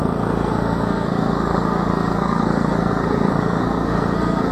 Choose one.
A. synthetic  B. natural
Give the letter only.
A